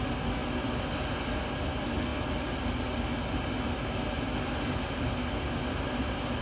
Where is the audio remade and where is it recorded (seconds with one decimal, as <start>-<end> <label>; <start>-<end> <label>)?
0.0-6.4 recorded